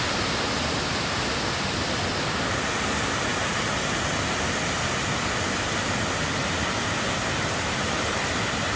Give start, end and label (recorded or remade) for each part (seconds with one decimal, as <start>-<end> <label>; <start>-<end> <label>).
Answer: 0.0-8.8 recorded